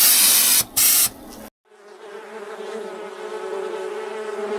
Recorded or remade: recorded